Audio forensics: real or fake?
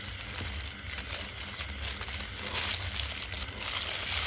real